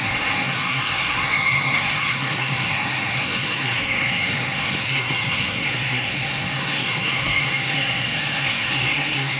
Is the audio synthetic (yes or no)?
yes